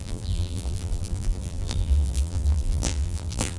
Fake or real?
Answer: fake